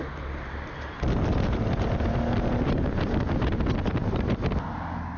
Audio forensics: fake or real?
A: real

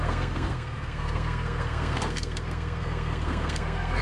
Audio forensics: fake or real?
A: fake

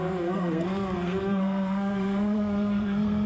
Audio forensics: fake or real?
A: fake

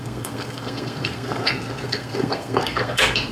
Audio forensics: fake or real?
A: fake